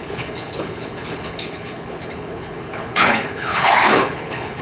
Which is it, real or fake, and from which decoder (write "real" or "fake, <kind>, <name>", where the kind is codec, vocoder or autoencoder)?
fake, codec, HILCodec